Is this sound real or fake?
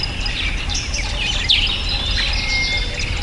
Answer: real